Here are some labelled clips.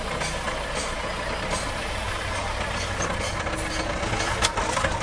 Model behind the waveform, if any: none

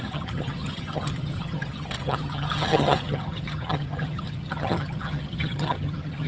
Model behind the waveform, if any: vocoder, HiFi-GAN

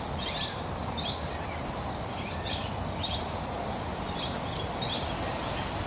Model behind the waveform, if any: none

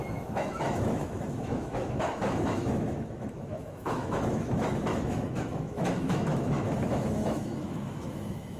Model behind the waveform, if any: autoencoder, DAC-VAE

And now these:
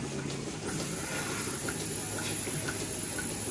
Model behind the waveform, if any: none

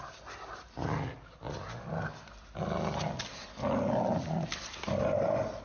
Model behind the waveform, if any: none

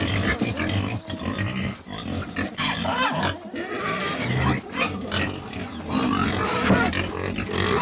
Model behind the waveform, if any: none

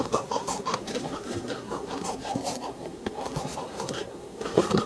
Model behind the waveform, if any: codec, SNAC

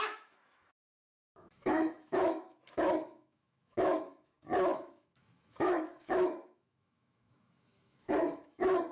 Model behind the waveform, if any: autoencoder, DAC-VAE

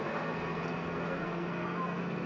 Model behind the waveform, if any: codec, SNAC